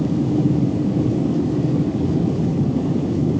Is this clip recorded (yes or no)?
no